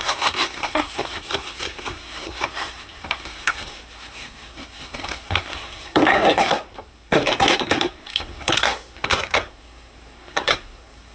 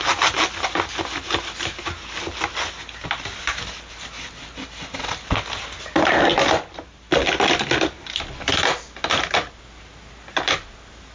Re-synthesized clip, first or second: first